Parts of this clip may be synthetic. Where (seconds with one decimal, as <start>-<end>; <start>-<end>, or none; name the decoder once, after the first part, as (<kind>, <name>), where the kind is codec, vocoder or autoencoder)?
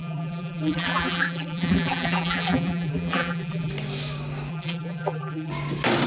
0.0-3.7 (vocoder, BigVGAN v2); 4.5-5.5